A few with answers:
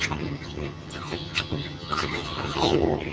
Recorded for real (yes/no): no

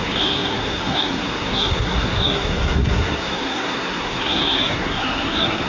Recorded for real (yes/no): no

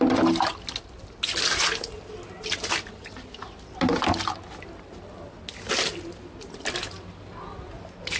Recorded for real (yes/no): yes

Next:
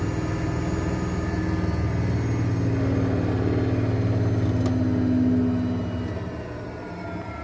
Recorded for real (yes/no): yes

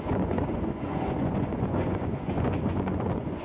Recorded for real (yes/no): no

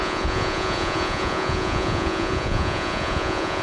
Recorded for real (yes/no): no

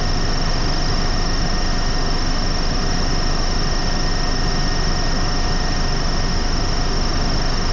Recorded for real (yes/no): yes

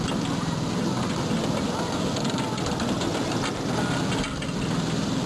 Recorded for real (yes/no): yes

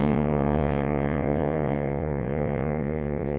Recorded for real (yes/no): no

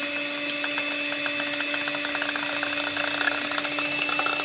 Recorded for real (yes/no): yes